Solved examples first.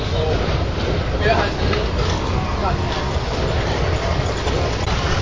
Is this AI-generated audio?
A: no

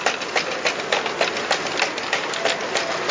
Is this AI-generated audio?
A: no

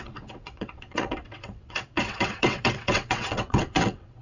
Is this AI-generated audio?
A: yes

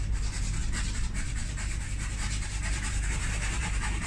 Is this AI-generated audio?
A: yes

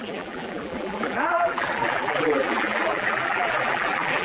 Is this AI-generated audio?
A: yes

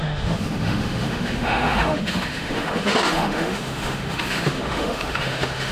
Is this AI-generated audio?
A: yes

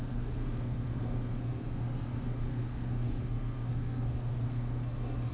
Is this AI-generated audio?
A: yes